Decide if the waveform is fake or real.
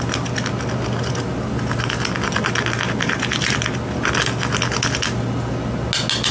real